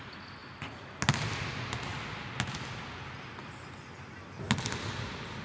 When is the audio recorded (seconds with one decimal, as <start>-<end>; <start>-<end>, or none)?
0.0-5.4